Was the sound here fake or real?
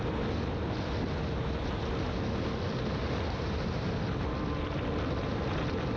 real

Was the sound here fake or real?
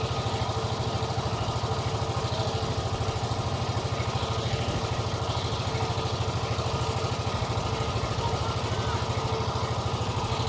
real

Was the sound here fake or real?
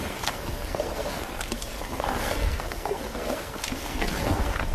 fake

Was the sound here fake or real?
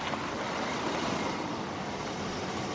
real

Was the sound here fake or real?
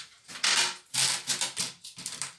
real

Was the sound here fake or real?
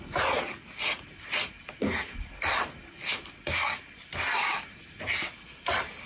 real